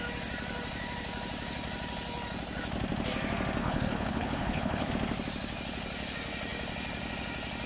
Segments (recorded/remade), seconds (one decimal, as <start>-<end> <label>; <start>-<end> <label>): 0.0-3.6 recorded; 3.6-4.9 remade; 4.9-7.7 recorded